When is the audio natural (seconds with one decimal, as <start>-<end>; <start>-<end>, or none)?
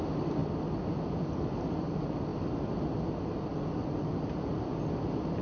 0.0-5.4